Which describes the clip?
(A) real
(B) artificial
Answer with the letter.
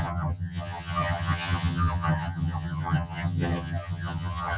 B